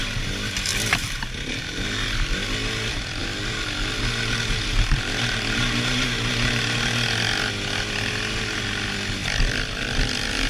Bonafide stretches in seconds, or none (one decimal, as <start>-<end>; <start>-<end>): 0.0-0.7; 1.6-9.2